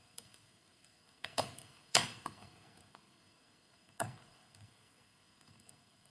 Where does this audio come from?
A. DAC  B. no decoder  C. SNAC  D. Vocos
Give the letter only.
C